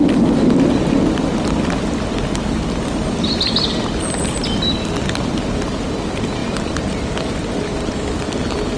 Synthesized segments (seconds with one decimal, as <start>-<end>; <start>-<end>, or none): 6.4-8.8